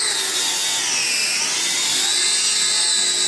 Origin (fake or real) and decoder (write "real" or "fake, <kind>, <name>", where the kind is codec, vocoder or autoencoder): real